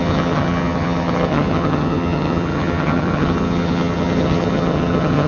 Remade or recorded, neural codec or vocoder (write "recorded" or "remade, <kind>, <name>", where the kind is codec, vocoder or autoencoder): remade, vocoder, HiFi-GAN